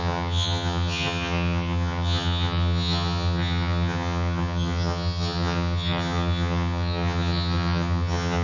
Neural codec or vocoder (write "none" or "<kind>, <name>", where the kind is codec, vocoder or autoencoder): vocoder, HiFi-GAN